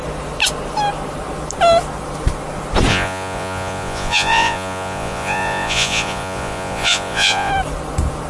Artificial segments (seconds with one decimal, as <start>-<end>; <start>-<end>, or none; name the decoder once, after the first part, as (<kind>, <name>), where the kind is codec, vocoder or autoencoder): 2.9-7.5 (vocoder, Vocos)